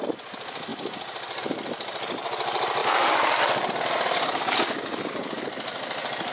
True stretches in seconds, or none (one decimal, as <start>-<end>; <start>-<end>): 0.0-6.3

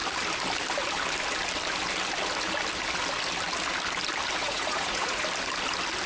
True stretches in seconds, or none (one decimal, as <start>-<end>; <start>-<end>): 0.0-4.4; 5.2-6.1

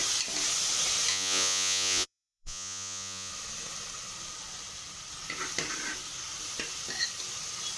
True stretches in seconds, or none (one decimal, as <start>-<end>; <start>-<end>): 0.0-1.1; 3.3-7.8

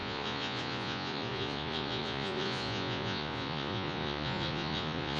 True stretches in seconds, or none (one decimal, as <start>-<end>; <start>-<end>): none

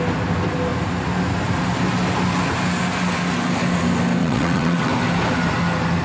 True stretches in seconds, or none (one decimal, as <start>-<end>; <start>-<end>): 0.0-4.2; 4.9-6.0

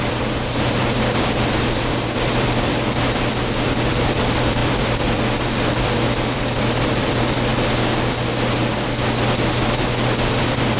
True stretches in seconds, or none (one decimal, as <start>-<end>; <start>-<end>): 7.5-10.2